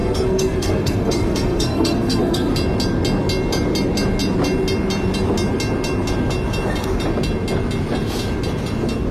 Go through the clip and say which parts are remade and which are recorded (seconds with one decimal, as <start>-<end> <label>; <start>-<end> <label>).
0.0-2.5 remade; 2.5-9.1 recorded